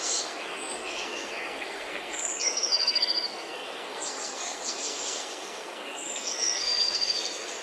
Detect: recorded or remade remade